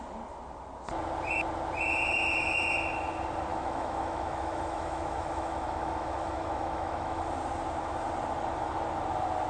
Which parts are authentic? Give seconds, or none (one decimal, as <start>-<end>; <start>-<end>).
0.0-3.5; 7.3-9.5